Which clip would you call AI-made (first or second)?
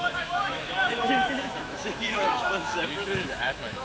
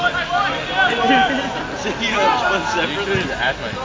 first